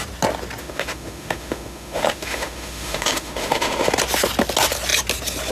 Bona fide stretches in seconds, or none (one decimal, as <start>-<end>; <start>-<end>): 0.0-0.6; 3.9-5.5